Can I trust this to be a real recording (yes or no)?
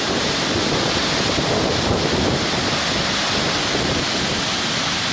yes